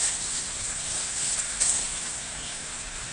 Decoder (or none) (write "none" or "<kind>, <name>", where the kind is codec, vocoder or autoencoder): codec, SNAC